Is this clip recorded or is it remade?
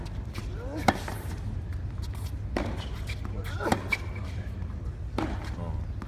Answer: recorded